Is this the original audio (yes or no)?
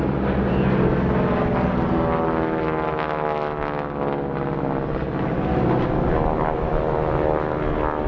yes